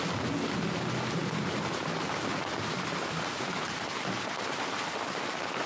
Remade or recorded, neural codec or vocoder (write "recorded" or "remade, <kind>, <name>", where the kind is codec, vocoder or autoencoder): recorded